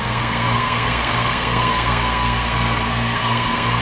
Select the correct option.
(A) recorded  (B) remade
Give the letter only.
B